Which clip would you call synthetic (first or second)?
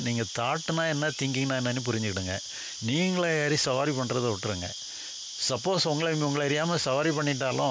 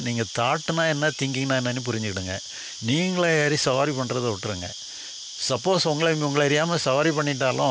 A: second